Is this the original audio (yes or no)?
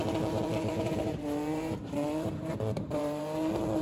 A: no